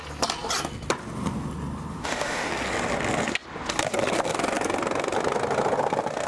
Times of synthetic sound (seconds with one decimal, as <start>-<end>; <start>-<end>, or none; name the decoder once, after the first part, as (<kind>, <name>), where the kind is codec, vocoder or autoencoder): 1.9-2.5 (autoencoder, DAC-VAE)